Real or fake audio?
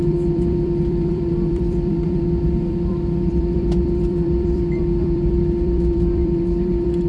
fake